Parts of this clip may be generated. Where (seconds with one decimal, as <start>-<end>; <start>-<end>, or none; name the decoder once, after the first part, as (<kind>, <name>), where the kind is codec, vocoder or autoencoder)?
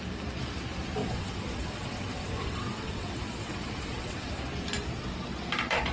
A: 1.0-4.4 (vocoder, WaveNeXt)